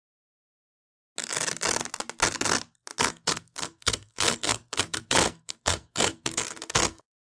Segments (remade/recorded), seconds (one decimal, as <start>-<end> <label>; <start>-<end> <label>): 0.0-0.6 remade; 0.6-3.0 recorded; 3.0-7.4 remade